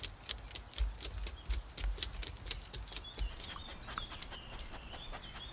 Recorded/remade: recorded